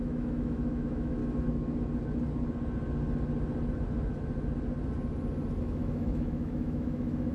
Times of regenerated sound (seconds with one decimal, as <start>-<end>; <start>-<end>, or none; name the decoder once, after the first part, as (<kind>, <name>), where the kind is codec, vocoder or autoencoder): 0.0-1.2 (autoencoder, DAC-VAE); 5.6-7.3